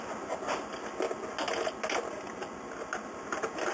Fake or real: real